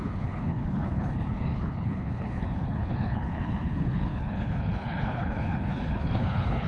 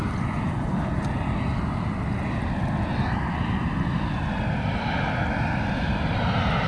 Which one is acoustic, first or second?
second